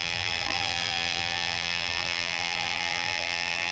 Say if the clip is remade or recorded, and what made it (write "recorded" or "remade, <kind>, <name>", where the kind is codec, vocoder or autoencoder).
remade, vocoder, BigVGAN v2